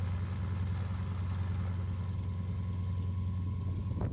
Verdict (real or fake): real